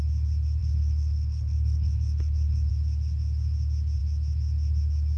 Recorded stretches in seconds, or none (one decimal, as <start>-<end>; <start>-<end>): 0.0-0.6; 2.7-5.2